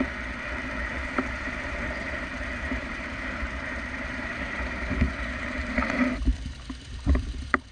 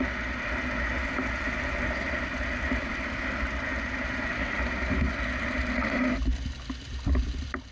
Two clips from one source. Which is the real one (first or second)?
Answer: second